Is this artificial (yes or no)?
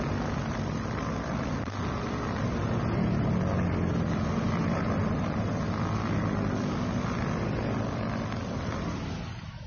no